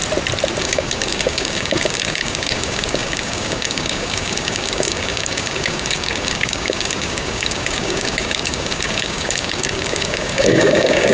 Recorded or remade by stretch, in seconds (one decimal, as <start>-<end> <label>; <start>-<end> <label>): 0.0-0.6 recorded; 0.6-11.1 remade